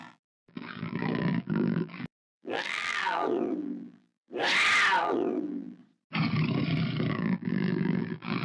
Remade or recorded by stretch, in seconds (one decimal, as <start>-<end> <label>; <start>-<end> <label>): 0.0-4.3 remade; 4.3-5.0 recorded; 5.0-5.8 remade; 5.8-7.1 recorded; 7.1-8.4 remade